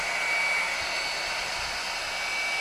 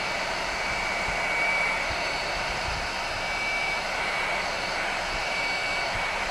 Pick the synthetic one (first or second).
second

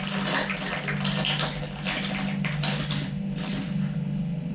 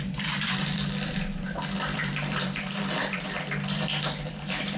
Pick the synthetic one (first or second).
second